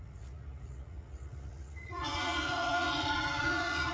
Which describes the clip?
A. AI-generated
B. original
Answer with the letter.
A